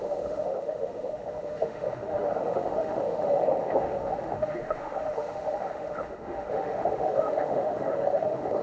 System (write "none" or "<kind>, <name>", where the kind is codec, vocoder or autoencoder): autoencoder, DAC-VAE